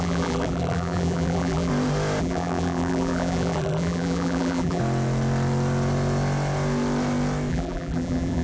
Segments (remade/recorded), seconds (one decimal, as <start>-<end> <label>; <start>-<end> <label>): 0.0-1.7 remade; 1.7-2.2 recorded; 2.2-4.8 remade; 4.8-7.5 recorded; 7.5-8.4 remade